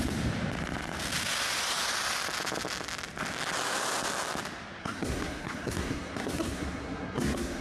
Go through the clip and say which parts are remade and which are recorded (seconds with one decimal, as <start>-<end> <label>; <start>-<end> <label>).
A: 0.0-4.8 recorded; 4.8-7.6 remade